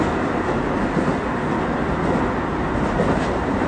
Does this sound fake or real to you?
real